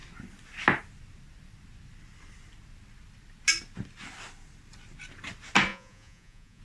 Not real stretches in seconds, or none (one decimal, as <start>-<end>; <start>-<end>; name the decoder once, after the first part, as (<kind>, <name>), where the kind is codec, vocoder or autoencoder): 5.7-6.6 (vocoder, Vocos)